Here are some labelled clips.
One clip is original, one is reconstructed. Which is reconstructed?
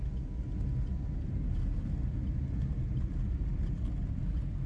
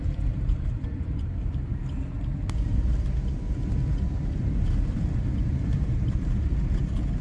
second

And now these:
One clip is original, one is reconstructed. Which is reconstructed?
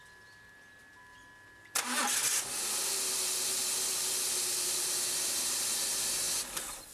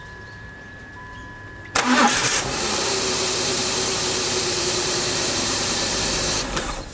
second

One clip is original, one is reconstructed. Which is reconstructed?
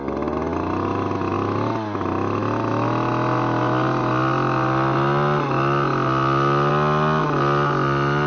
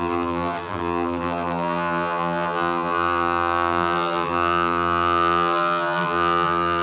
second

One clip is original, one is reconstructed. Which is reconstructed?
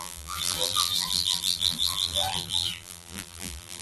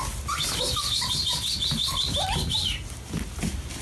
first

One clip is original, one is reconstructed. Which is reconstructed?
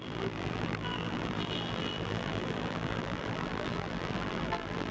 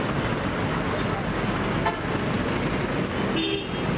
first